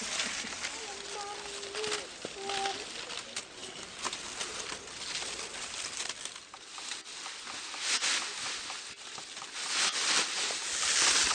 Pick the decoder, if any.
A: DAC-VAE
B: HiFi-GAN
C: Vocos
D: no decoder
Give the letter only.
D